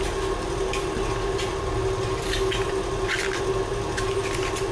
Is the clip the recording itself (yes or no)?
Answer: yes